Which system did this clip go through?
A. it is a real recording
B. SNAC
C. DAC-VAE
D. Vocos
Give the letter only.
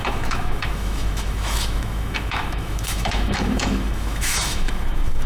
C